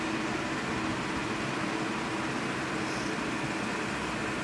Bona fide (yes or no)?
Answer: yes